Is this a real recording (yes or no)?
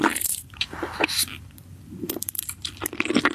no